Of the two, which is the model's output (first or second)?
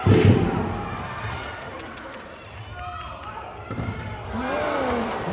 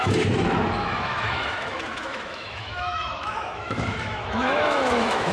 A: second